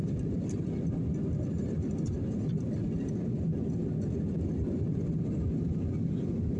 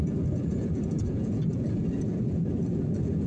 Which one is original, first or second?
first